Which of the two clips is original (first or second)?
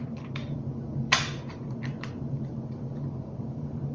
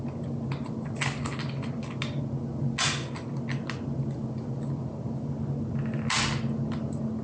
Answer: second